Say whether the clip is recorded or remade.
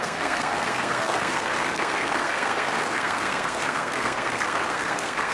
remade